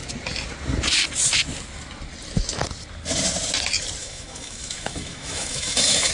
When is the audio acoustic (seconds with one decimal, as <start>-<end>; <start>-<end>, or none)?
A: 0.0-4.0